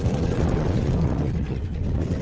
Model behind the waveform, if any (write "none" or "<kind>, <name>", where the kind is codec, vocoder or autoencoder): vocoder, WaveNeXt